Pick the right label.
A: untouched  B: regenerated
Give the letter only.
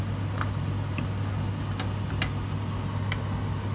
A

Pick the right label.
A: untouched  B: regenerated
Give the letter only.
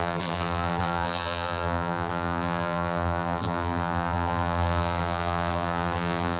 B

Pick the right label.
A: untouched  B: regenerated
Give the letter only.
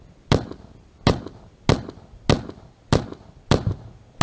A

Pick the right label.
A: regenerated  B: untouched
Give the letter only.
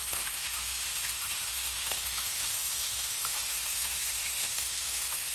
A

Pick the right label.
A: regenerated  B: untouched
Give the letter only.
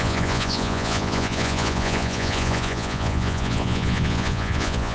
A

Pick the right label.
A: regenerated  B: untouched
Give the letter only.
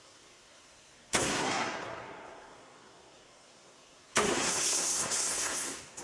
A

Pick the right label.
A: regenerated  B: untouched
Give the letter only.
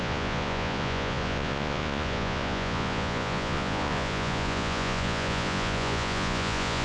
A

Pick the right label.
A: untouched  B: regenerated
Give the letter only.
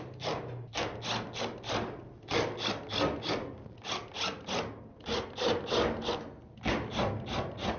A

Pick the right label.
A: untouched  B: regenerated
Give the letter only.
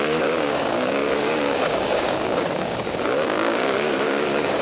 B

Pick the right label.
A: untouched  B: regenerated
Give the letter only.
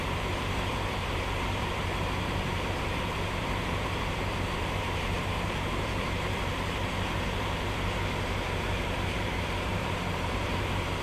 B